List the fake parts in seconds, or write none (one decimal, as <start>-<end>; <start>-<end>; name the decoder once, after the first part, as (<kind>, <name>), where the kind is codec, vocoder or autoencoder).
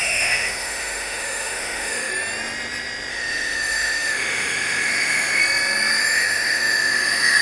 0.0-2.1 (autoencoder, DAC-VAE); 3.1-5.4; 6.0-7.4